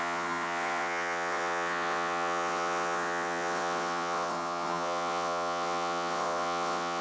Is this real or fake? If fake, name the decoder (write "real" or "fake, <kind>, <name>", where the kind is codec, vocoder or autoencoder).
fake, vocoder, WaveNeXt